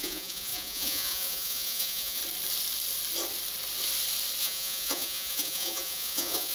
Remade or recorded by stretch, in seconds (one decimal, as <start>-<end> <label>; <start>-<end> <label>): 0.0-2.2 remade; 2.2-4.4 recorded; 4.4-6.5 remade